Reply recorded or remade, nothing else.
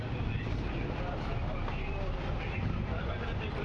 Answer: recorded